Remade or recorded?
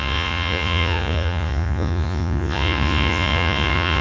remade